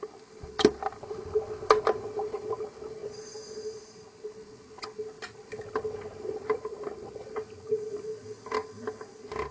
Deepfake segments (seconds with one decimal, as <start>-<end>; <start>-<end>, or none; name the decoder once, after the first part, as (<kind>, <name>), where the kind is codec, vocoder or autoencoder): none